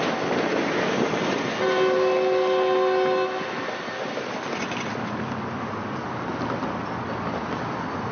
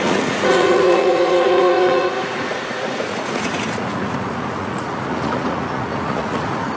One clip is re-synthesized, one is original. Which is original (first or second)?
first